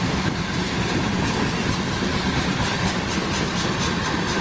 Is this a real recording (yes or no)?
no